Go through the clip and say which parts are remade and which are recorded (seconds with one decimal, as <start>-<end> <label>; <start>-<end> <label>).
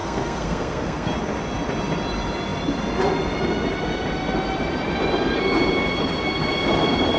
0.0-1.1 remade; 1.1-7.2 recorded